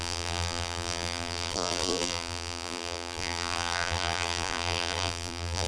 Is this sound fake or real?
fake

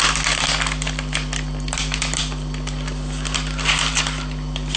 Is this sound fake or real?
real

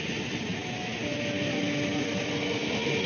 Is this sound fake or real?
real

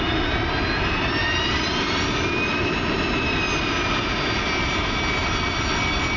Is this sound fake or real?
real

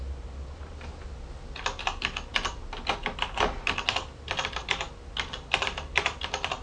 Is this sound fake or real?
real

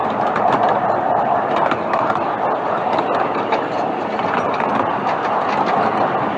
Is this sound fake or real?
real